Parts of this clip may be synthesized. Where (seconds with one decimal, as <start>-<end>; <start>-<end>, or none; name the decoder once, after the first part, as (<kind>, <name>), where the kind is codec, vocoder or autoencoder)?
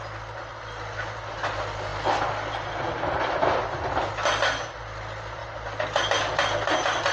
none